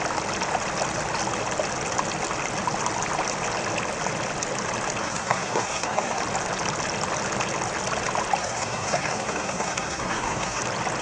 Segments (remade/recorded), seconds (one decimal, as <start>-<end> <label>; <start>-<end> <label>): 0.0-5.0 recorded; 5.0-6.2 remade; 6.2-8.4 recorded; 8.4-10.6 remade; 10.6-11.0 recorded